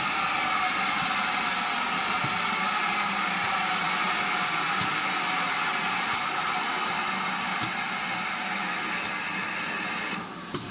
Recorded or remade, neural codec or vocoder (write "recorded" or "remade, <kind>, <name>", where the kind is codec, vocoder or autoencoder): recorded